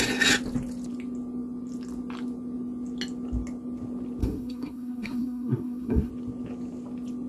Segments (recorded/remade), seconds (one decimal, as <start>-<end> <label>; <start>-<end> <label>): 0.0-4.2 recorded; 4.2-6.1 remade; 6.1-7.3 recorded